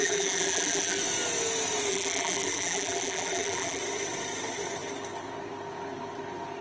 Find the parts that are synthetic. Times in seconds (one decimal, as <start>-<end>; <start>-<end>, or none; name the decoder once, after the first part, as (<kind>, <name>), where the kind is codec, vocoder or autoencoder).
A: 0.0-1.0 (vocoder, BigVGAN v2); 1.9-3.8